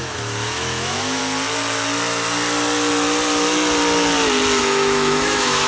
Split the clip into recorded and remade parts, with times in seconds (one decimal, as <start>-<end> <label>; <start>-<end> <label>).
0.0-1.2 remade; 1.2-4.6 recorded; 4.6-5.7 remade